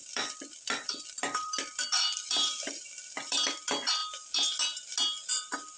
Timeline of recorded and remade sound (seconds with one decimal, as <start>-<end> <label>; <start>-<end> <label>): 0.0-3.5 remade; 3.5-5.8 recorded